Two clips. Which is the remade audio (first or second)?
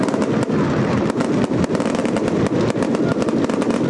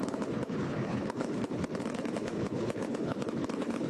second